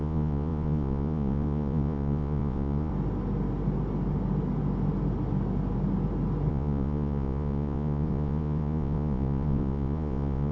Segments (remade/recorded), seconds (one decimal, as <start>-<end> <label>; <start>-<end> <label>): 0.0-2.9 remade; 2.9-6.5 recorded; 6.5-10.5 remade